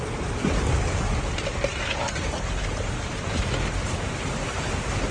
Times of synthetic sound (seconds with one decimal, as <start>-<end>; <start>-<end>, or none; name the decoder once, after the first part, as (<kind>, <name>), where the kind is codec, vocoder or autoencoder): none